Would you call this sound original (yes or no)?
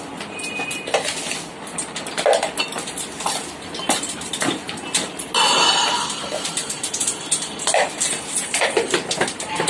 yes